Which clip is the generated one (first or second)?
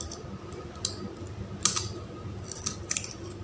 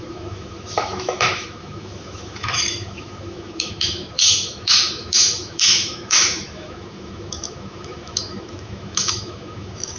second